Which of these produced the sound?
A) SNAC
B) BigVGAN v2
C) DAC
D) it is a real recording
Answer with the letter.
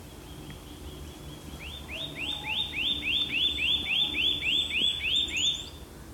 D